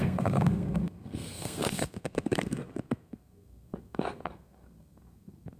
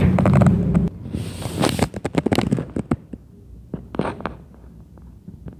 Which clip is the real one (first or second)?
second